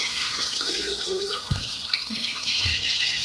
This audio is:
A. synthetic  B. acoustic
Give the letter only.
A